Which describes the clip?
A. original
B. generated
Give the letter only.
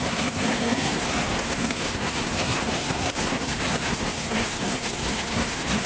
B